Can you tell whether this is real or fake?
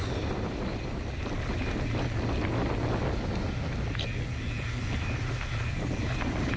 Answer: real